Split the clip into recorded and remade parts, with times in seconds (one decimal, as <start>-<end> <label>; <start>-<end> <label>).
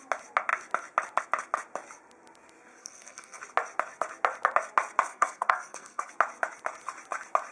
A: 0.0-2.8 recorded; 2.8-3.4 remade; 3.4-5.1 recorded; 5.1-6.1 remade; 6.1-7.5 recorded